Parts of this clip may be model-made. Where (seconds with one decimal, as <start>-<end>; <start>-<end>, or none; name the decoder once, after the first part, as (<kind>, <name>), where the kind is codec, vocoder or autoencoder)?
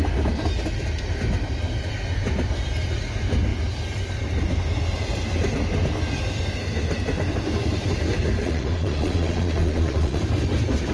8.4-10.2 (vocoder, Vocos)